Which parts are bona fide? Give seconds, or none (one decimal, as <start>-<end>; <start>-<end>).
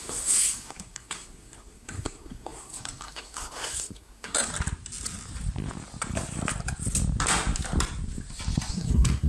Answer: 4.5-8.7